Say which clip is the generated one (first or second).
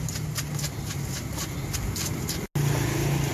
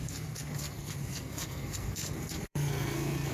second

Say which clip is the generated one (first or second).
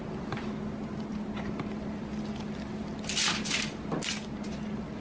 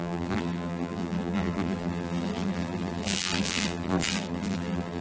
second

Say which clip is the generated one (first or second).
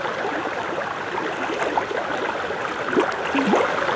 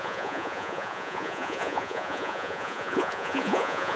second